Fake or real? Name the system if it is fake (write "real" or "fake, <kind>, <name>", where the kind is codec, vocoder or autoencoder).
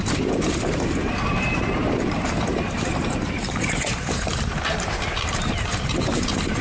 fake, vocoder, BigVGAN v2